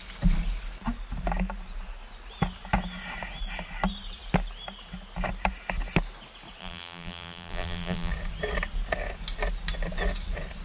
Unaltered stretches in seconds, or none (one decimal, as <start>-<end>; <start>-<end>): 0.0-6.6; 8.1-10.6